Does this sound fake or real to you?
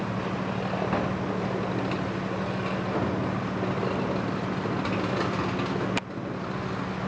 real